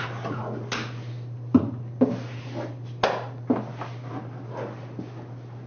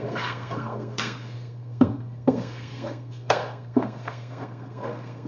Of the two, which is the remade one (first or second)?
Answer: second